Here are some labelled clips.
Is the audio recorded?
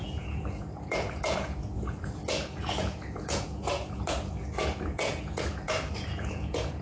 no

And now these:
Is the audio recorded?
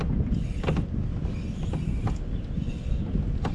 yes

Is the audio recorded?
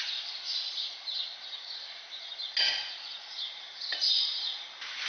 yes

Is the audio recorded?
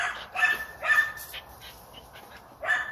no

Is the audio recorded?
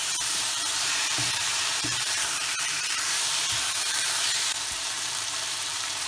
no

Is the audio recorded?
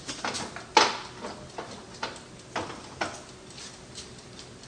yes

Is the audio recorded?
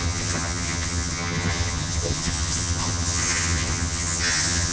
no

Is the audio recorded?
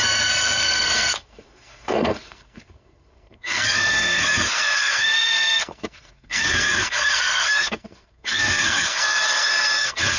no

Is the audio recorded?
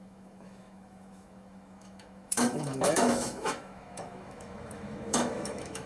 no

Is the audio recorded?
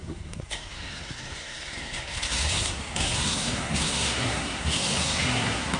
no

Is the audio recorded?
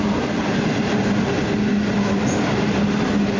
yes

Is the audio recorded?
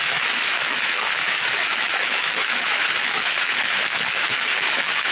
no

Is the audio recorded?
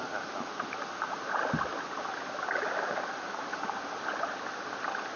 yes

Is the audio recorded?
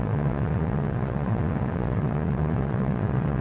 no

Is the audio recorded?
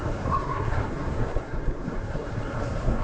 no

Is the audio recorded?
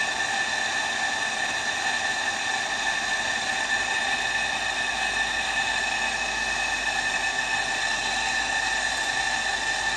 yes